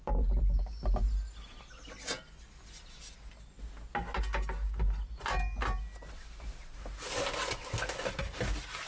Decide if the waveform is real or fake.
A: real